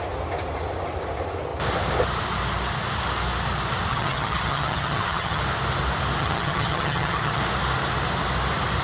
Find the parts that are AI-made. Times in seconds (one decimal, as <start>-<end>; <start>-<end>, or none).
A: 3.9-5.4; 6.2-7.4